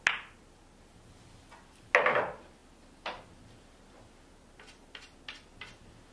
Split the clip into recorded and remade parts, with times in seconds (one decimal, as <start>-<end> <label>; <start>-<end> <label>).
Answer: 0.0-6.1 recorded